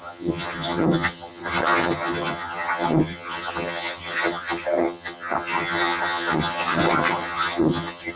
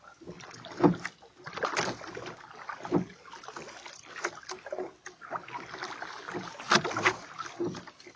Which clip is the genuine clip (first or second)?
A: second